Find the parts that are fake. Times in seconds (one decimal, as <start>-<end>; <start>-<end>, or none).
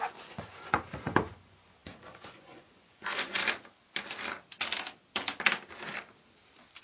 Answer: 0.0-3.4